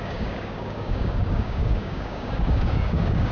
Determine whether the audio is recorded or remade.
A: remade